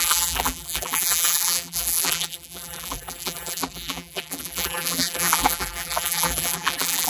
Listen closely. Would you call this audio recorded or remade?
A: remade